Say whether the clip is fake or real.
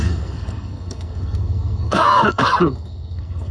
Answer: fake